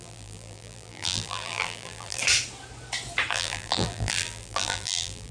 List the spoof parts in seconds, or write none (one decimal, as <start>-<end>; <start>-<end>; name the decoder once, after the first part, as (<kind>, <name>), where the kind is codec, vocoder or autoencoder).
0.0-2.2 (vocoder, BigVGAN v2); 3.3-5.3